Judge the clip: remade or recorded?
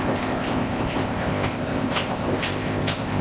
remade